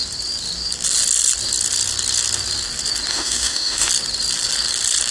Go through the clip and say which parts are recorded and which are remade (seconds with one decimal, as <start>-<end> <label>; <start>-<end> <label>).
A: 0.0-3.1 recorded; 3.1-3.9 remade; 3.9-5.1 recorded